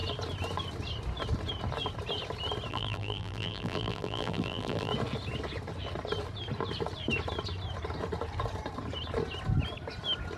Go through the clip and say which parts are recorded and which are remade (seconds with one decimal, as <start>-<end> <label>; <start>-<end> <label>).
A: 0.0-2.7 recorded; 2.7-4.9 remade; 4.9-10.4 recorded